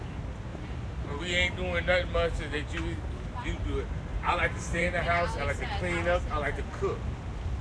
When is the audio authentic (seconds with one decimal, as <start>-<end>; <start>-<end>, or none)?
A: 0.0-0.5; 1.2-4.1; 5.1-7.6